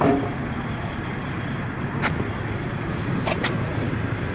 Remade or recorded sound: recorded